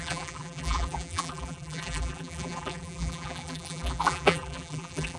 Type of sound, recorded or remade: remade